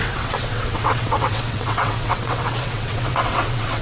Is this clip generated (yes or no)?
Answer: yes